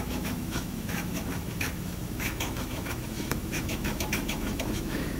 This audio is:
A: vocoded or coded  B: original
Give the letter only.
A